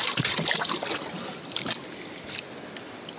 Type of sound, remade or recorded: recorded